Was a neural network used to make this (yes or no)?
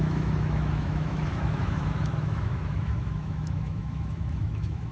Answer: yes